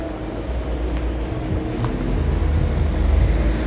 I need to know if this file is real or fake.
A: real